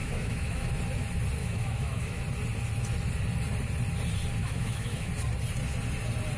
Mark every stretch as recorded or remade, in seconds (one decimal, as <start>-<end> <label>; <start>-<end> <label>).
0.0-0.7 remade; 0.7-1.4 recorded; 1.4-2.2 remade; 2.2-4.4 recorded; 4.4-5.1 remade; 5.1-6.4 recorded

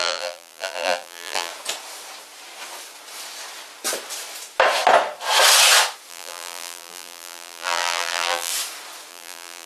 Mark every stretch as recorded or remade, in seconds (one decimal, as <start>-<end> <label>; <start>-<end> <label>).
0.0-1.5 remade; 1.5-6.1 recorded; 6.1-8.5 remade; 8.5-9.1 recorded; 9.1-9.7 remade

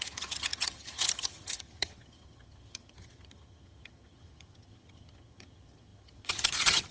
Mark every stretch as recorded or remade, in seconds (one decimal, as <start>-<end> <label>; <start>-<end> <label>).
0.0-6.9 remade

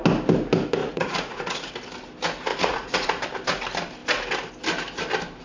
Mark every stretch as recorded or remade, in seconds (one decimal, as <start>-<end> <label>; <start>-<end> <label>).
0.0-0.8 recorded; 0.8-1.7 remade; 1.7-2.5 recorded; 2.5-3.2 remade; 3.2-5.4 recorded

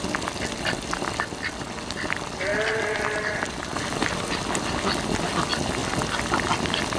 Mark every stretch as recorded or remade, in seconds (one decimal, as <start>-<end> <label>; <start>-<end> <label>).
0.0-7.0 recorded

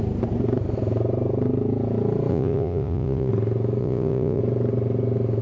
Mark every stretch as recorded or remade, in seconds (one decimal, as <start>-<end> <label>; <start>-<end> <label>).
0.0-2.3 recorded; 2.3-3.3 remade; 3.3-3.8 recorded; 3.8-4.4 remade; 4.4-5.4 recorded